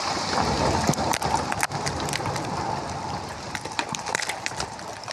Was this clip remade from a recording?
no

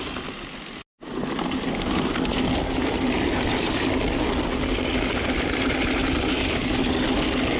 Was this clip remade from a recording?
no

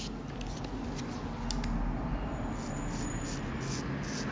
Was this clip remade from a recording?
no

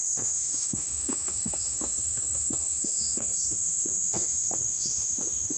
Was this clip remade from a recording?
yes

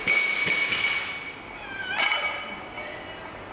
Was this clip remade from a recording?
no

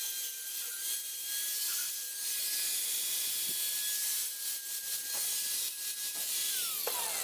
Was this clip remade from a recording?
no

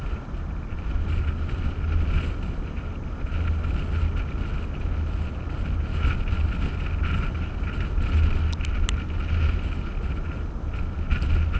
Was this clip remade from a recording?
no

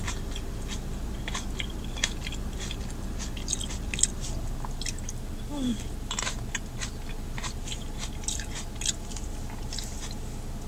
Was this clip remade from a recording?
no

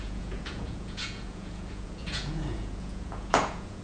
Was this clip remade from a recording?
yes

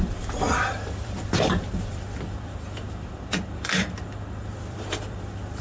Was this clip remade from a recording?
yes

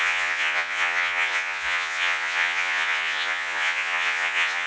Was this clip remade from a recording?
yes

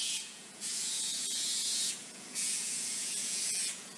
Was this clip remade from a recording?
yes